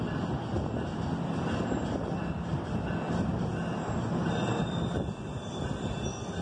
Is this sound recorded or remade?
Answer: recorded